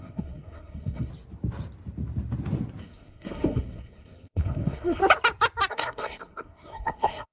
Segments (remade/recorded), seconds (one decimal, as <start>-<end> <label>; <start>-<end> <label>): 0.0-1.1 remade; 1.1-2.8 recorded; 2.8-5.0 remade; 5.0-5.7 recorded; 5.7-7.3 remade